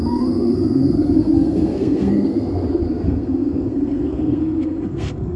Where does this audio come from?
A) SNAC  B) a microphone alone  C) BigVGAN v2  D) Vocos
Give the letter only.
A